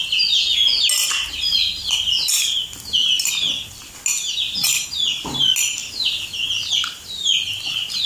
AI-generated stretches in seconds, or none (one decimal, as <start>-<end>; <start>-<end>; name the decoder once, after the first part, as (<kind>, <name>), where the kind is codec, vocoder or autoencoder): none